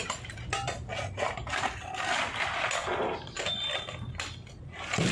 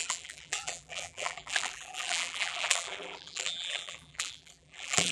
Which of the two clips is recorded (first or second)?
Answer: first